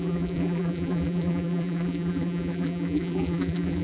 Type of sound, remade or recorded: remade